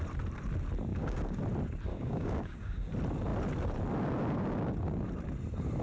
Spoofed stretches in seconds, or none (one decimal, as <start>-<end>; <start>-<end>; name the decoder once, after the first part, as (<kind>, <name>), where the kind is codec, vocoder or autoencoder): 0.9-1.4 (codec, DAC); 1.9-2.9